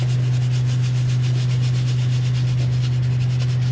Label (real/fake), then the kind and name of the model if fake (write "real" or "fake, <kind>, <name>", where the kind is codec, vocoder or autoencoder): real